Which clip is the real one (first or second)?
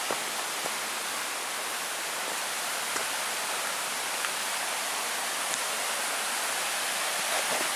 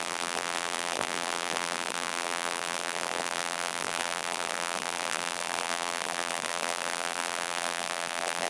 first